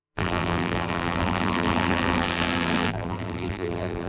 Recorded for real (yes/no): no